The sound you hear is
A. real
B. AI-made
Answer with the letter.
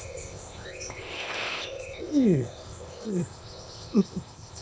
B